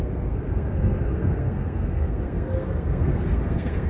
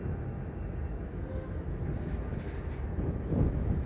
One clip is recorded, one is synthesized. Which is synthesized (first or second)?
first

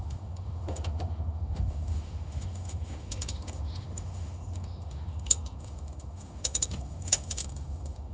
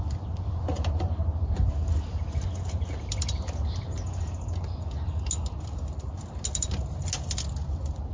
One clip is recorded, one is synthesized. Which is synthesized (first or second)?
first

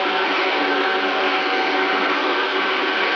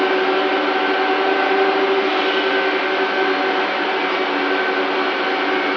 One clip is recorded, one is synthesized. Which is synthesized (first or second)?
first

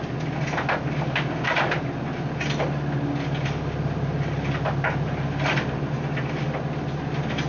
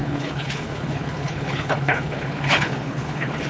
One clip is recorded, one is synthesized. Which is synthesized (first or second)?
second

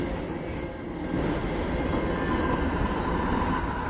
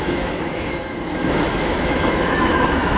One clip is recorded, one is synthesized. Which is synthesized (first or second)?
second